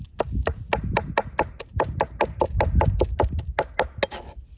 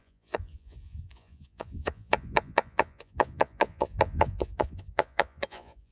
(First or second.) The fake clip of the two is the second